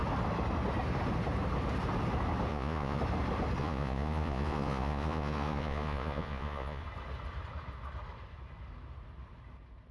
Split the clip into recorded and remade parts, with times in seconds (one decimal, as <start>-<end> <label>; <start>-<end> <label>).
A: 0.0-2.5 recorded; 2.5-3.0 remade; 3.0-3.6 recorded; 3.6-6.8 remade; 6.8-9.9 recorded